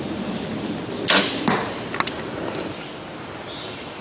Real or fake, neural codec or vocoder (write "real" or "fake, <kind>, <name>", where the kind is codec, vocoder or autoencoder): real